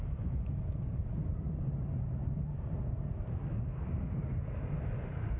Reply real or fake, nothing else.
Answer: real